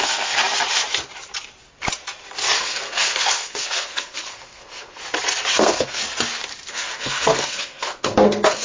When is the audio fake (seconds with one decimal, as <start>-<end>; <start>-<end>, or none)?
0.0-0.4; 2.6-5.0; 5.5-6.0; 6.7-8.6